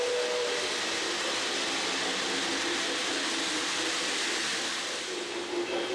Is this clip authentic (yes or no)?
yes